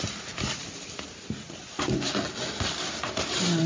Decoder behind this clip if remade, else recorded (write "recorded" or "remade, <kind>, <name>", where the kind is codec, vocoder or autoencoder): recorded